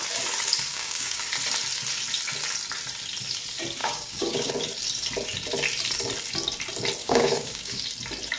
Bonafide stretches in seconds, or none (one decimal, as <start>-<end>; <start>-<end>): 0.0-0.7; 1.3-3.8; 4.5-7.0; 7.8-8.4